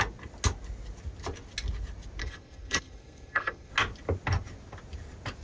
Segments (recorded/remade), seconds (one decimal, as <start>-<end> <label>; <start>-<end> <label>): 0.0-2.2 recorded; 2.2-3.7 remade; 3.7-5.4 recorded